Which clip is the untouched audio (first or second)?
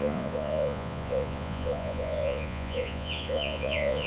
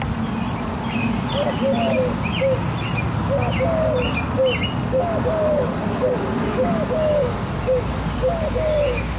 second